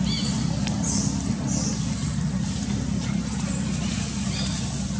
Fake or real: real